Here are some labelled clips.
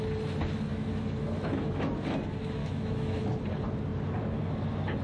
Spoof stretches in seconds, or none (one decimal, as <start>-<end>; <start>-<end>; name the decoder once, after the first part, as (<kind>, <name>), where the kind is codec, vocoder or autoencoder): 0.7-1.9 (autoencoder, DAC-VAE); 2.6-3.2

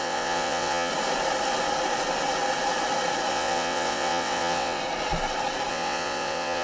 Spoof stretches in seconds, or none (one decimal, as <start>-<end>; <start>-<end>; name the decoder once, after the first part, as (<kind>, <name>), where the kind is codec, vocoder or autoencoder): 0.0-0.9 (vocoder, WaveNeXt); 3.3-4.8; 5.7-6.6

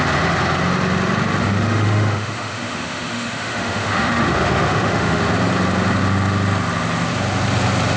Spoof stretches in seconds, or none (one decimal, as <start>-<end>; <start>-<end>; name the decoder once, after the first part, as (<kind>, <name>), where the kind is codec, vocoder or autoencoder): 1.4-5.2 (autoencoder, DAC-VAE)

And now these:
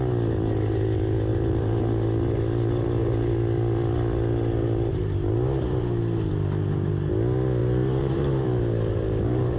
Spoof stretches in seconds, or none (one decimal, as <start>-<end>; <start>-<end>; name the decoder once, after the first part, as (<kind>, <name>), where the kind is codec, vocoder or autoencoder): 1.3-1.8 (vocoder, BigVGAN v2); 7.6-9.6

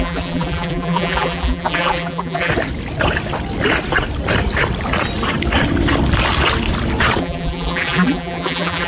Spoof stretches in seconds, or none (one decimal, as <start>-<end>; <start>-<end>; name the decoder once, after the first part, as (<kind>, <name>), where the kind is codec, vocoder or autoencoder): 0.0-2.5 (vocoder, BigVGAN v2); 7.2-8.9

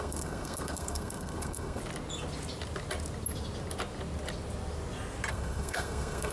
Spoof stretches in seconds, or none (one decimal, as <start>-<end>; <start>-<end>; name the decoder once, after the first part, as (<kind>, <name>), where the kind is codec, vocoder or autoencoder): 0.0-1.8 (codec, SNAC); 5.3-6.3

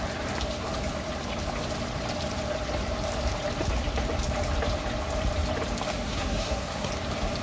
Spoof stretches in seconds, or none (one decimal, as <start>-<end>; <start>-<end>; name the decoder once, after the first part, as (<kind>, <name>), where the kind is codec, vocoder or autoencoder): 5.9-6.9 (codec, SNAC)

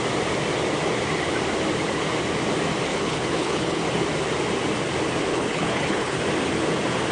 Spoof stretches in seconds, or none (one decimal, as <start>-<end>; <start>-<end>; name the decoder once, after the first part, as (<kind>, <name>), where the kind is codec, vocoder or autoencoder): 2.9-3.8 (codec, HILCodec); 5.3-6.2